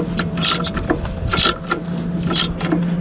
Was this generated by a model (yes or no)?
no